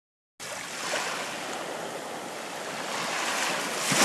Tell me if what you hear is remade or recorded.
recorded